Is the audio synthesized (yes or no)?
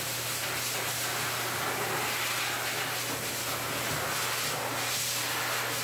no